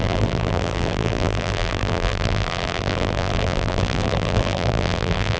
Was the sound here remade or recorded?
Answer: remade